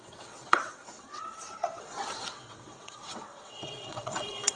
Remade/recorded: remade